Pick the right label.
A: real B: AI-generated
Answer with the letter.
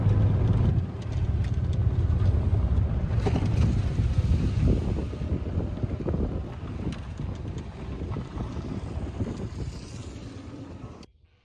A